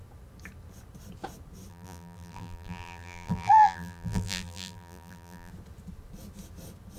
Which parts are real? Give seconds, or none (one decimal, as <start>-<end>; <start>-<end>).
0.0-1.7; 5.5-7.0